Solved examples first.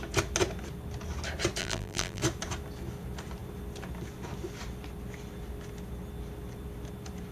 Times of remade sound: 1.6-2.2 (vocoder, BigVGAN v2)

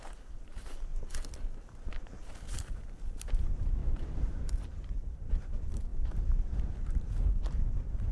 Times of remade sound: 0.0-0.9 (vocoder, BigVGAN v2); 2.6-8.1

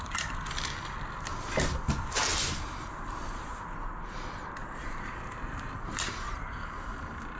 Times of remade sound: 2.3-3.6 (vocoder, BigVGAN v2); 4.6-7.4

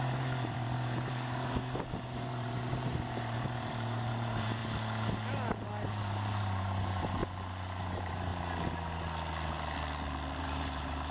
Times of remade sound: 0.0-4.6 (vocoder, BigVGAN v2); 6.0-7.2; 7.8-8.3; 10.4-11.1

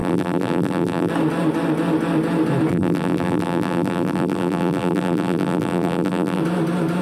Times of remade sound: 0.0-1.1 (vocoder, BigVGAN v2); 2.7-6.4